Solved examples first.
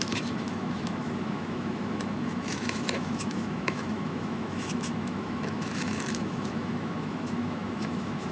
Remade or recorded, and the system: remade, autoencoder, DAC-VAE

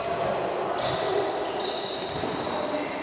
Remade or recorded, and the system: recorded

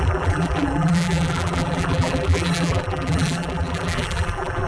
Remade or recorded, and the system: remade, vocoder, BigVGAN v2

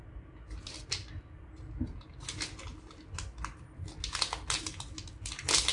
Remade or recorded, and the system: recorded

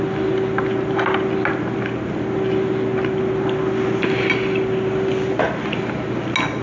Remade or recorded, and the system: recorded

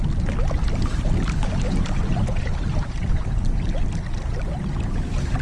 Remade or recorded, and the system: recorded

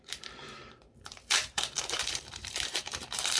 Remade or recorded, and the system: remade, vocoder, BigVGAN v2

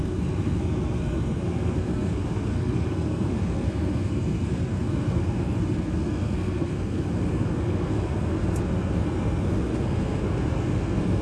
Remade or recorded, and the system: remade, codec, SNAC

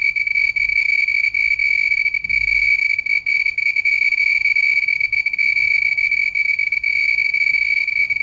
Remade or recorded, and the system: recorded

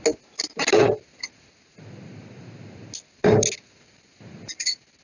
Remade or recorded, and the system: recorded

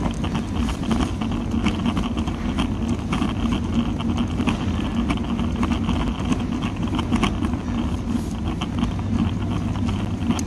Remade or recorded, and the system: recorded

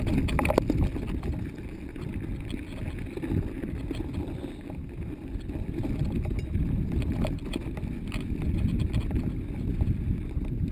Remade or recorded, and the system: recorded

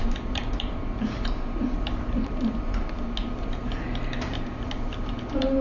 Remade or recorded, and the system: remade, vocoder, BigVGAN v2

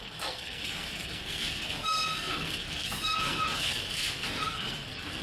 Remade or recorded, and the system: remade, codec, SNAC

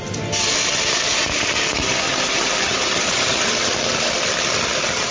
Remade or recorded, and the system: recorded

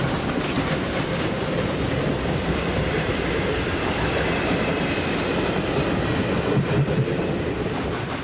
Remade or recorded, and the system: remade, vocoder, BigVGAN v2